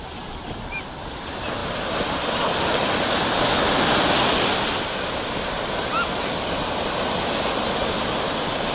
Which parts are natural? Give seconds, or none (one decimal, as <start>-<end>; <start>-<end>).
0.0-8.7